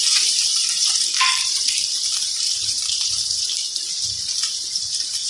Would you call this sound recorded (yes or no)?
no